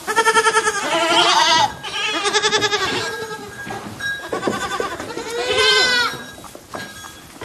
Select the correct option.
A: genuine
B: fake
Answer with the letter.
A